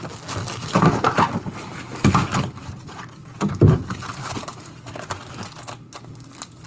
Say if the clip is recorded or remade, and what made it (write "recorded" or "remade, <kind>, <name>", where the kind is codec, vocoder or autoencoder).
recorded